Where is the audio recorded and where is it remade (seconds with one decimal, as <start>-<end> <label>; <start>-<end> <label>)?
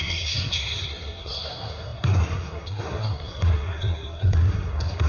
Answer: 0.0-5.1 remade